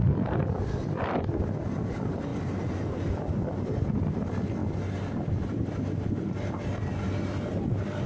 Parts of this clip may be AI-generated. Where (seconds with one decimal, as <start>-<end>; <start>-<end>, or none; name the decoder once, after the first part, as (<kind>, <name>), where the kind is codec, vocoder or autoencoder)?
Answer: none